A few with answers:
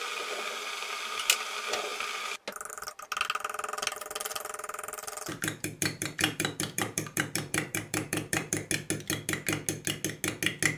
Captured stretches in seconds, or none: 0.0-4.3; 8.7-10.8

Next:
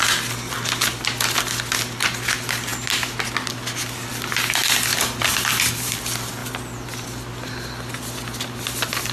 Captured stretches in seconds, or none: 0.0-9.1

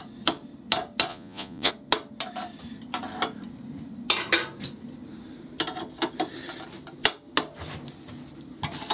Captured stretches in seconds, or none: 0.0-1.1; 1.7-8.9

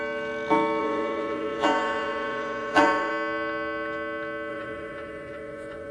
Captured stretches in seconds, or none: 0.0-0.8; 3.1-4.5